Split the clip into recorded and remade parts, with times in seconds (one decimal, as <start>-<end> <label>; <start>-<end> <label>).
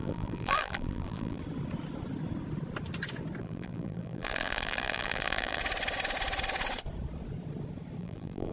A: 0.0-1.4 remade; 1.4-3.4 recorded; 3.4-5.6 remade; 5.6-8.0 recorded; 8.0-8.5 remade